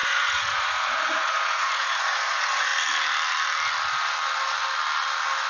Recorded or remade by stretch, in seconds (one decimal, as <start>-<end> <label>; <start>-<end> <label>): 0.0-2.7 remade; 2.7-5.5 recorded